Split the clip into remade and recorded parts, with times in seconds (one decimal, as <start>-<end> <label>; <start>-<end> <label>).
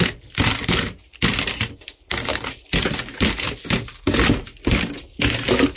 0.0-5.8 recorded